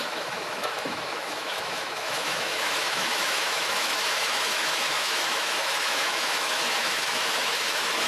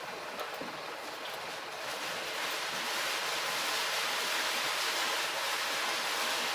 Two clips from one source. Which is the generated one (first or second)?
first